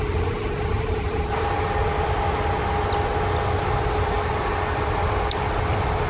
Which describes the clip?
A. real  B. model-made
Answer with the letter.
A